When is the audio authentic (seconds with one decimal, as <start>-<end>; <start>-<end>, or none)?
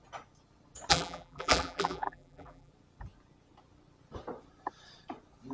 0.0-0.9; 2.7-5.5